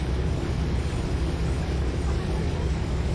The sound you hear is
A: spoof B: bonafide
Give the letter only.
A